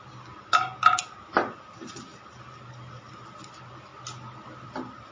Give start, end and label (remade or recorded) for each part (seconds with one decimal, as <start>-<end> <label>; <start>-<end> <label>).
0.0-5.1 recorded